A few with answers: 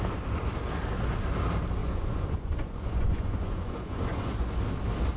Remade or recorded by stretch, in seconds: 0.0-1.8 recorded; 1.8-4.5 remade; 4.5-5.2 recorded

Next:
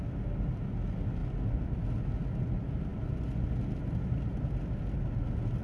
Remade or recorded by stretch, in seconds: 0.0-5.6 recorded

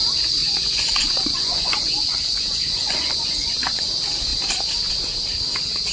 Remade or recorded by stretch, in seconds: 0.0-0.4 recorded; 0.4-3.9 remade; 3.9-5.9 recorded

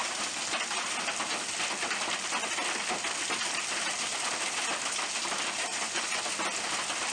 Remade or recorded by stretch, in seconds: 0.0-5.7 recorded; 5.7-6.2 remade; 6.2-7.1 recorded

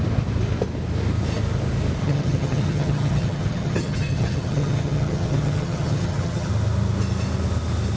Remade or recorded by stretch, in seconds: 0.0-2.0 recorded; 2.0-6.5 remade; 6.5-8.0 recorded

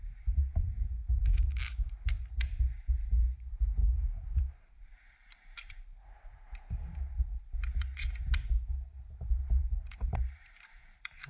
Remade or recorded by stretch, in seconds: 0.0-11.3 remade

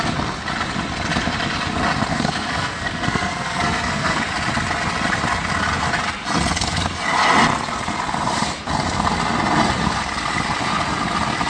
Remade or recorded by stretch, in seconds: 0.0-2.1 recorded; 2.1-4.2 remade; 4.2-11.5 recorded

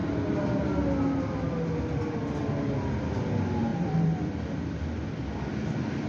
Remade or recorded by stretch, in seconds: 0.0-3.7 recorded; 3.7-6.1 remade